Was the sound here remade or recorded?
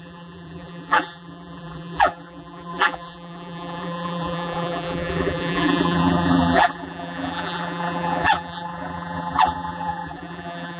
remade